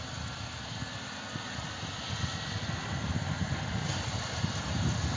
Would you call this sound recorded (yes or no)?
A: yes